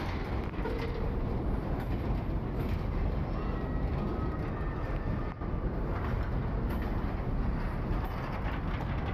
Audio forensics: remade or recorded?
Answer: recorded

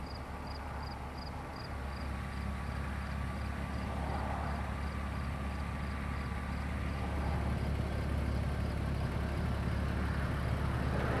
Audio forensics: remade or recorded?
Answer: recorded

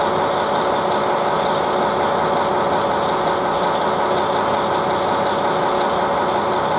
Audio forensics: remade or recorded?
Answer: recorded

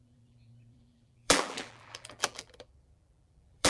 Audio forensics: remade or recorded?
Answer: remade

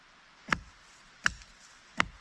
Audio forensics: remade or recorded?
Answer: recorded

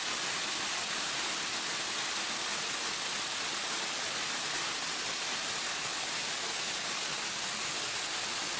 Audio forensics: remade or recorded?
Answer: recorded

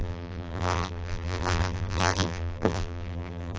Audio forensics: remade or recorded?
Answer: remade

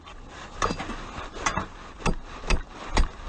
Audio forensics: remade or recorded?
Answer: recorded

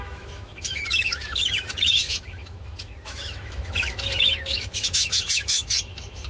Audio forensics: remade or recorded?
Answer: remade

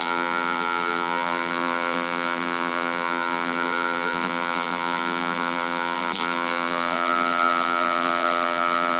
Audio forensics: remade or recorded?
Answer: remade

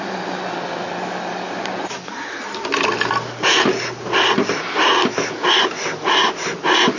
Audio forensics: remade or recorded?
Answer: recorded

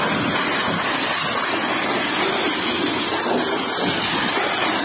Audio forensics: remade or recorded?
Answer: recorded